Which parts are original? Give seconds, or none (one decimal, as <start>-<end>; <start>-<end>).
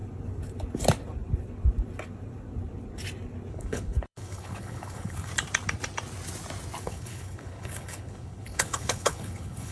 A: 0.0-3.5; 5.3-6.8